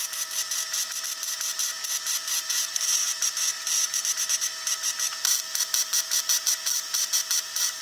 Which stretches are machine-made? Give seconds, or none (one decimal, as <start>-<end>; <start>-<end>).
none